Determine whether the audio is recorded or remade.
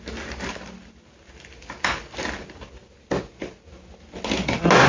recorded